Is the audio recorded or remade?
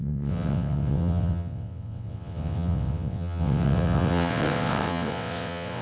remade